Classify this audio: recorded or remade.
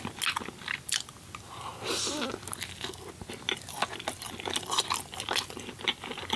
recorded